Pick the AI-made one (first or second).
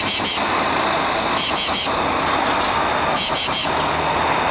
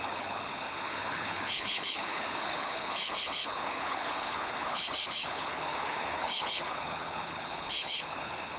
second